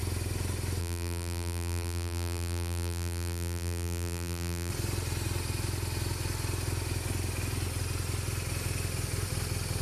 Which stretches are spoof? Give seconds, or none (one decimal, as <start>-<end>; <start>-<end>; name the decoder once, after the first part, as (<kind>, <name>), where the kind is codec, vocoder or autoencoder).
0.8-4.7 (vocoder, BigVGAN v2)